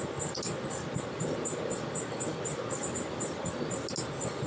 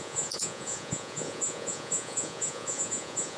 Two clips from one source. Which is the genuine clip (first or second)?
first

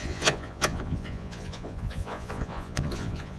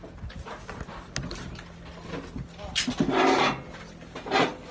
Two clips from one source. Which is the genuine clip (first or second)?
second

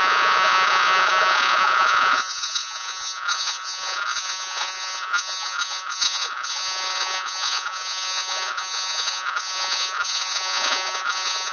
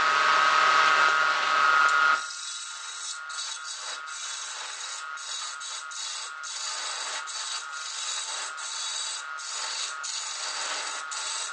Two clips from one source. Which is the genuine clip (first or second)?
second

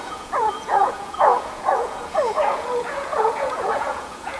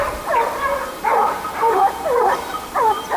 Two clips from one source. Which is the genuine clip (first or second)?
second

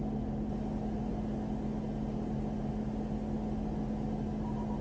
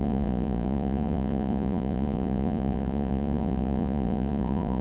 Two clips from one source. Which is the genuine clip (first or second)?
first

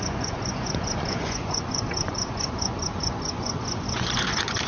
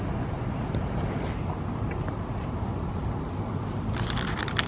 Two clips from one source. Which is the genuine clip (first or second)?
second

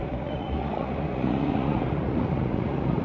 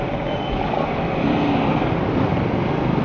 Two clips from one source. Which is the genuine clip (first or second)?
second